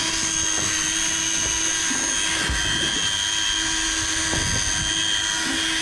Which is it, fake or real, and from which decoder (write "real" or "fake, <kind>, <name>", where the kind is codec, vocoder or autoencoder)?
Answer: real